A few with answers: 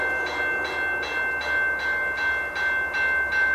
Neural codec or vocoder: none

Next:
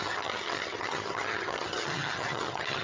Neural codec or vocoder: vocoder, HiFi-GAN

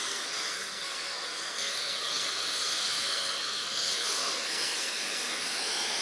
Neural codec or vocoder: codec, SNAC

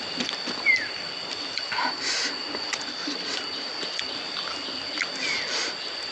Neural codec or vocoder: none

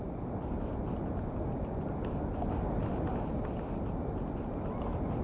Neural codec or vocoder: none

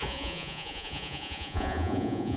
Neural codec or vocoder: vocoder, Vocos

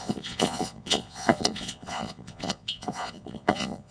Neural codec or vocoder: vocoder, Vocos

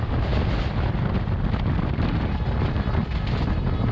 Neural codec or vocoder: none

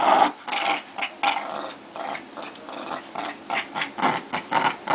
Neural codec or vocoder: none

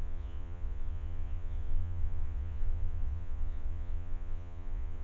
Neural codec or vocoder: vocoder, Vocos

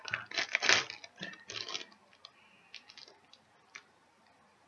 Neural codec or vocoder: none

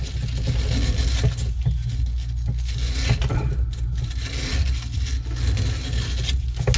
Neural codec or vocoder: none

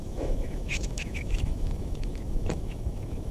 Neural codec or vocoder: autoencoder, DAC-VAE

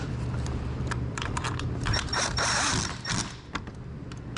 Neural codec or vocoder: vocoder, BigVGAN v2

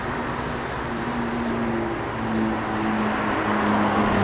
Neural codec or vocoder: none